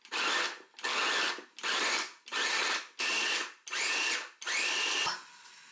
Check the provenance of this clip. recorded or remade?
recorded